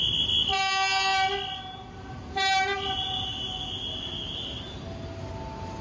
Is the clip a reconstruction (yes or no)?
no